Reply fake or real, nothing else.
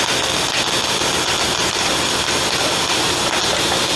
real